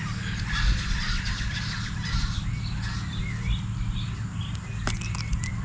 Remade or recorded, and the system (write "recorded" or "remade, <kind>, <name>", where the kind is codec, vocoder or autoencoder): recorded